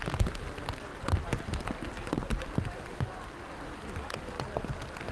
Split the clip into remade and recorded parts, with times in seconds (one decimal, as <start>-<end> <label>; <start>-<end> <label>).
0.0-5.1 recorded